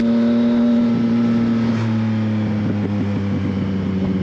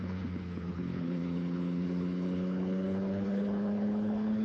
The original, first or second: first